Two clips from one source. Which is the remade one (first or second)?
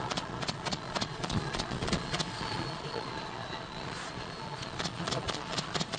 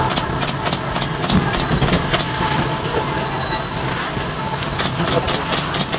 first